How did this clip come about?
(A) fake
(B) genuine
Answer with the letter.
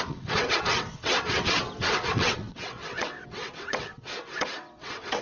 A